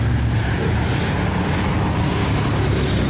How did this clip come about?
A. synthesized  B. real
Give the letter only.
B